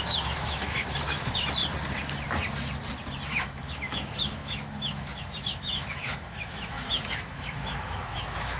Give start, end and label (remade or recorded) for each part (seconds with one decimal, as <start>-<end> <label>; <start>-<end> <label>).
0.0-1.6 remade; 1.6-3.3 recorded; 3.3-8.6 remade

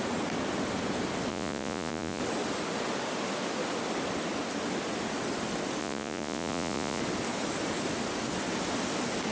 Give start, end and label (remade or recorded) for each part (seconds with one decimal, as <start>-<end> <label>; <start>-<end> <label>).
0.0-1.3 recorded; 1.3-2.2 remade; 2.2-5.8 recorded; 5.8-7.0 remade; 7.0-9.3 recorded

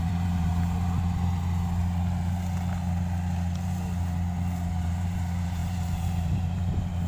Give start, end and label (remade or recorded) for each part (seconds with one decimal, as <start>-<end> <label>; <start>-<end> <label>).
0.0-0.5 remade; 0.5-4.8 recorded; 4.8-7.1 remade

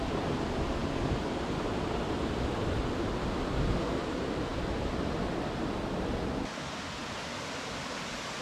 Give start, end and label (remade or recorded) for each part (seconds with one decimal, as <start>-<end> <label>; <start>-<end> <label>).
0.0-0.8 recorded; 0.8-2.5 remade; 2.5-4.5 recorded; 4.5-5.0 remade; 5.0-7.0 recorded; 7.0-7.8 remade; 7.8-8.4 recorded

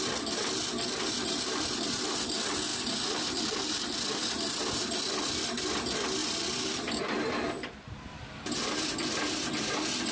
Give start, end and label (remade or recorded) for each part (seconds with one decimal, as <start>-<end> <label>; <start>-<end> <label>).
0.0-2.7 recorded; 2.7-5.6 remade; 5.6-6.2 recorded; 6.2-8.5 remade; 8.5-10.1 recorded